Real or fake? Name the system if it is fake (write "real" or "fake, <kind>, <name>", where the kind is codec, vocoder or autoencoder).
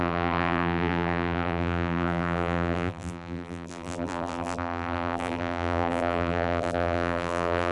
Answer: fake, vocoder, BigVGAN v2